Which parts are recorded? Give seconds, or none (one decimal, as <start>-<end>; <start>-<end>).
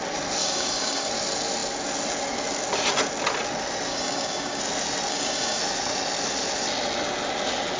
0.0-0.4; 1.1-3.9; 4.6-5.1; 5.6-7.8